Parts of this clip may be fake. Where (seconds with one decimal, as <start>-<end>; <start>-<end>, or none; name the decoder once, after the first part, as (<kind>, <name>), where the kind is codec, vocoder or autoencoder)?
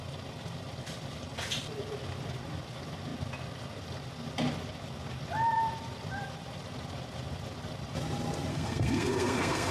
8.5-9.7 (codec, SNAC)